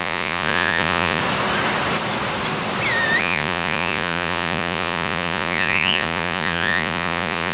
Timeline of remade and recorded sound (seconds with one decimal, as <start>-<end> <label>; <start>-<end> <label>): 0.0-1.2 remade; 1.2-3.2 recorded; 3.2-7.5 remade